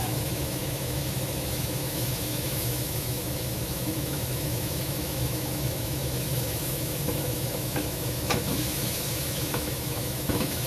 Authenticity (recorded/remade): remade